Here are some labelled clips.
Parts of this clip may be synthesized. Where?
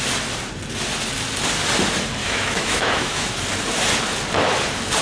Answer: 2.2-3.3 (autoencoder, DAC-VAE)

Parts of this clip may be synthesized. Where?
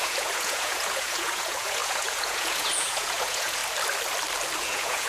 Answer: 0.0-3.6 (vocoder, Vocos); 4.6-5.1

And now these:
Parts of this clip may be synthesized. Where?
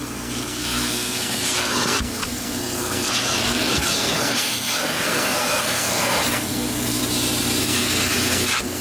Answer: 0.0-7.0 (codec, SNAC); 7.6-8.8